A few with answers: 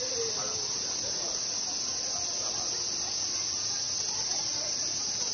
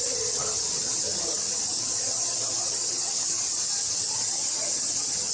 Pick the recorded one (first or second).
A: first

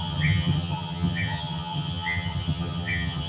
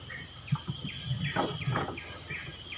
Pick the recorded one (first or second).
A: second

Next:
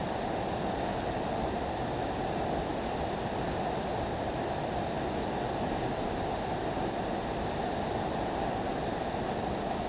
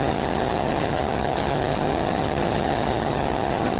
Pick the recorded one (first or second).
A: first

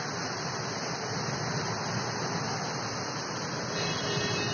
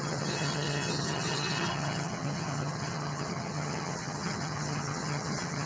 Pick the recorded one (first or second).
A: first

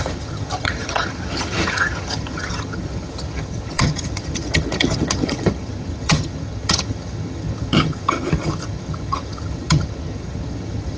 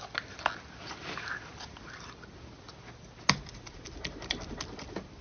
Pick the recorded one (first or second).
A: second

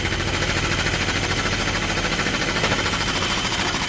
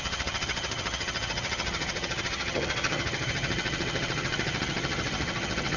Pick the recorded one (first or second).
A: first